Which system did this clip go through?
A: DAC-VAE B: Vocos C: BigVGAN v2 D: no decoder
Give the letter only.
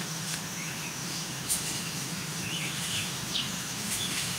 A